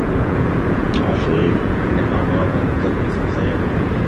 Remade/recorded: remade